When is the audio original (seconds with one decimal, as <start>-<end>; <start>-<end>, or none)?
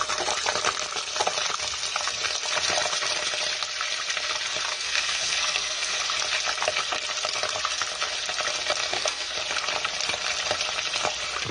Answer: 0.0-4.7; 6.0-8.9; 9.4-11.5